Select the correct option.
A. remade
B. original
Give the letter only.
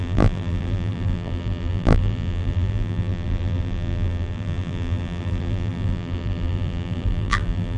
A